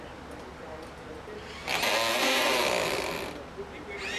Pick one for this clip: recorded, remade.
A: recorded